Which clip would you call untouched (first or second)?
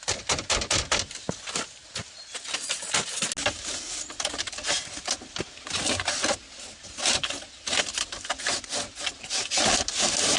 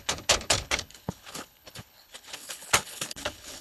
first